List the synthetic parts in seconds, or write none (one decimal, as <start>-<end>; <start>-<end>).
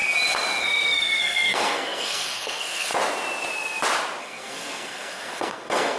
0.6-2.9; 4.2-6.0